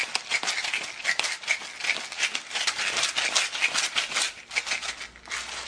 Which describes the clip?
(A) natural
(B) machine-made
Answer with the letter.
A